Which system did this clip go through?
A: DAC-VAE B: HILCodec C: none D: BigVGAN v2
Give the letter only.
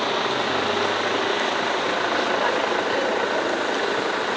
C